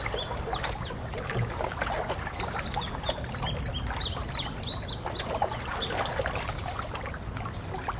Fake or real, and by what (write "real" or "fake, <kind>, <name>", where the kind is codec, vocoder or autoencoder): real